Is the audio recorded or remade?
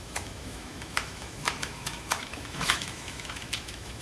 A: remade